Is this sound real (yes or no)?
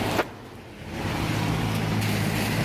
yes